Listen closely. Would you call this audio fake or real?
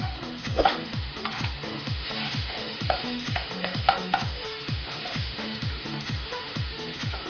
fake